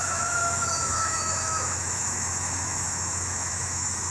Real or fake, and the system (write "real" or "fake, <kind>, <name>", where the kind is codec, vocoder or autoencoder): fake, autoencoder, DAC-VAE